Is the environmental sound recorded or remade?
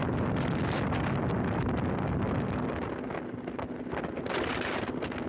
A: recorded